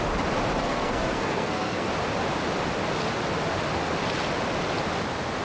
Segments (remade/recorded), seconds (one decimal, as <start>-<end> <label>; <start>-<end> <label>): 0.0-0.6 recorded; 0.6-1.9 remade; 1.9-5.4 recorded